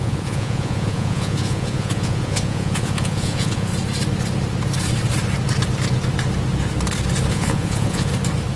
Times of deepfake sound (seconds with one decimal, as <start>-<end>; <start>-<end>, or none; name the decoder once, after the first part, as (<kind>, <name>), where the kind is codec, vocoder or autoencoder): 0.0-3.7 (vocoder, Vocos); 7.3-8.1